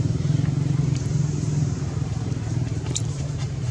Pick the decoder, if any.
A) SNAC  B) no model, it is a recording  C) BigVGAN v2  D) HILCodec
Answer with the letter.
C